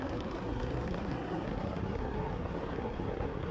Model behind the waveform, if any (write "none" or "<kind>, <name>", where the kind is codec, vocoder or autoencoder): codec, SNAC